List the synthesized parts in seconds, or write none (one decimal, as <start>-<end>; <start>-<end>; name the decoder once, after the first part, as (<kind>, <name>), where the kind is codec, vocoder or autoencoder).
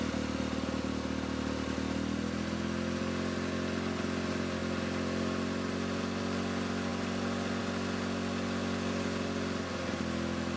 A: none